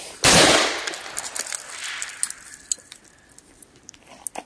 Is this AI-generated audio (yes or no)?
no